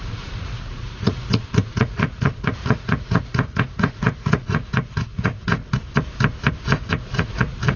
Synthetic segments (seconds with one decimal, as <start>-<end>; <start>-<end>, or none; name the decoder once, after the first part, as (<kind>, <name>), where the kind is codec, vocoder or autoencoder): 0.0-5.6 (vocoder, Vocos); 6.9-7.8